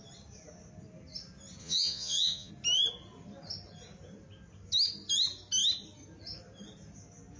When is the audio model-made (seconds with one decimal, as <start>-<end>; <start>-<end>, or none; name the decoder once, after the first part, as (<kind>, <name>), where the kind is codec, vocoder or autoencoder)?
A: 1.6-2.5 (vocoder, Vocos)